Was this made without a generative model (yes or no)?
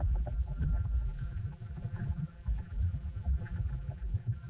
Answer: no